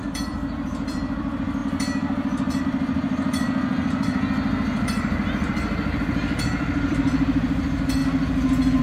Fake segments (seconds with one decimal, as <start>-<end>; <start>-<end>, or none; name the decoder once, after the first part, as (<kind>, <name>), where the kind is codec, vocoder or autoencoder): 0.0-1.6 (vocoder, BigVGAN v2); 2.6-8.0